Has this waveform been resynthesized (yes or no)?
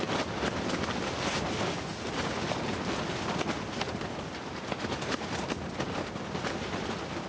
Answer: no